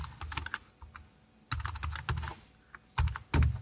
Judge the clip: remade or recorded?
recorded